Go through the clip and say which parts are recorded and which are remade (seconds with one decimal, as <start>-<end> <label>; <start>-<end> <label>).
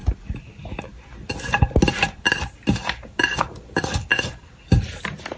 0.0-5.4 recorded